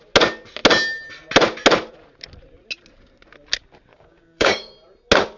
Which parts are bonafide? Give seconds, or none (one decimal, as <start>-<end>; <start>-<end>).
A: 0.0-3.9; 4.7-5.4